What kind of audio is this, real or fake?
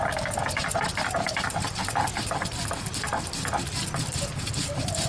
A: real